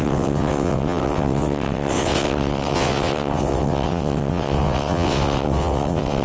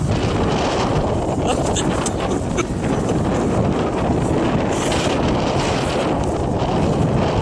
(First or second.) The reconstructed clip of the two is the first